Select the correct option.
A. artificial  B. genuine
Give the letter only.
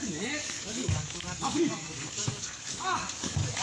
A